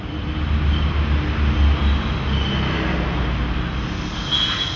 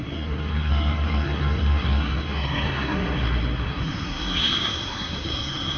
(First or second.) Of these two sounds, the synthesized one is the second